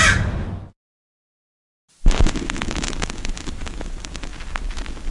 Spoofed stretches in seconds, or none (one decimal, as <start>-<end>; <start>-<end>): none